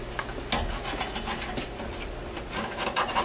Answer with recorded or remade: recorded